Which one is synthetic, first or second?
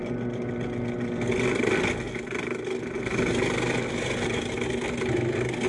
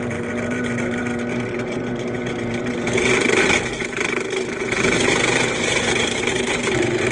second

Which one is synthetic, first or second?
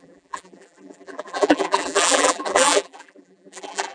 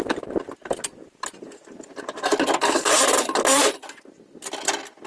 first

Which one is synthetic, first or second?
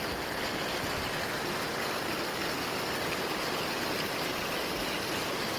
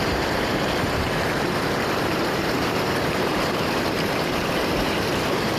second